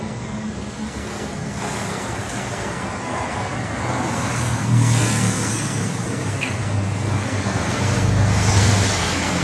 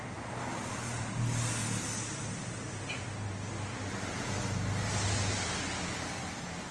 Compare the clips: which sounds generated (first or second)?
first